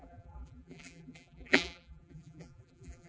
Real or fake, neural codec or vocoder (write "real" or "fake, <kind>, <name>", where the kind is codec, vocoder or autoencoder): fake, vocoder, BigVGAN v2